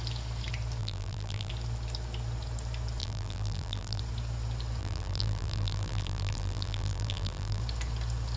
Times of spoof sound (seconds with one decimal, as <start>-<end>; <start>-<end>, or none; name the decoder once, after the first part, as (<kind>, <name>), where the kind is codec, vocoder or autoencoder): 0.8-1.5 (vocoder, BigVGAN v2); 3.0-4.0; 4.8-7.6